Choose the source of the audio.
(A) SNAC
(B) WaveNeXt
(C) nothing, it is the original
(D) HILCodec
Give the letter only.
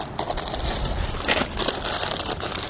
C